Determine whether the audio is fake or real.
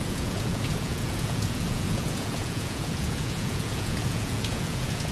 fake